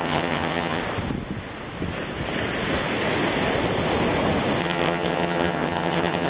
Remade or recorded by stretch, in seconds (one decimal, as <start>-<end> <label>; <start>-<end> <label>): 0.0-0.8 remade; 0.8-4.6 recorded; 4.6-6.3 remade